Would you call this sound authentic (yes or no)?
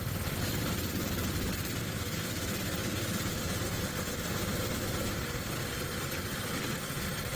yes